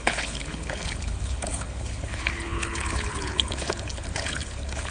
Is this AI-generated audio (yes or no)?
yes